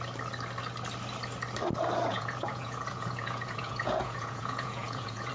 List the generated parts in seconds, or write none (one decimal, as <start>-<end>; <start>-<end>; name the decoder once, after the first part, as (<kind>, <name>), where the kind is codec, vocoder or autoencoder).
2.1-5.3 (vocoder, Vocos)